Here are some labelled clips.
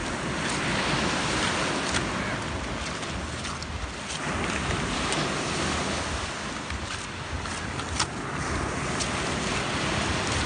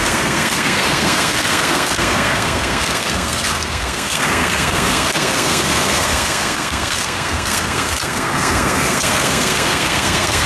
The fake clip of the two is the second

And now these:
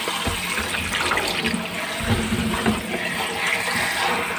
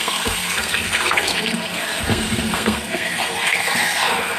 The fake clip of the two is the second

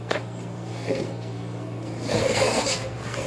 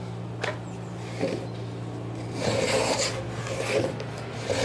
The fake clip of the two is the first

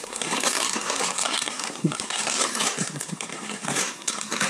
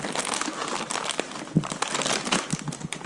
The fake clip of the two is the first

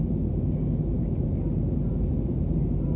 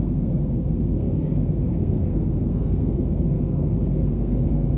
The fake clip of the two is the second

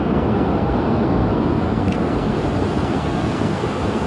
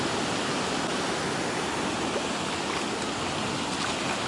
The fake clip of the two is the first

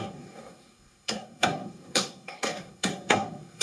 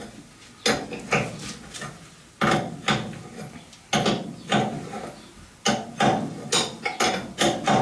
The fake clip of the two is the first